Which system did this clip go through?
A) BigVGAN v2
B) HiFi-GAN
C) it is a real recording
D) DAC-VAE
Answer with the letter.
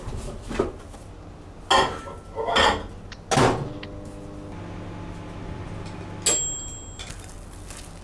C